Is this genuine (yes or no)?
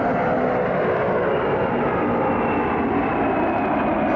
yes